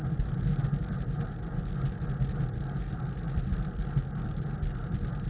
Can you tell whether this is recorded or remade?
recorded